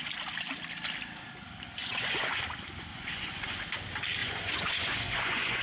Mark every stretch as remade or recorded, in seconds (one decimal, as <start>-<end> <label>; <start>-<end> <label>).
0.0-1.8 recorded; 1.8-2.4 remade; 2.4-2.9 recorded; 2.9-3.6 remade; 3.6-4.2 recorded; 4.2-5.6 remade